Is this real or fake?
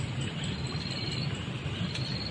real